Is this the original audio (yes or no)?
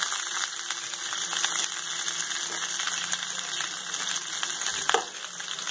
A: yes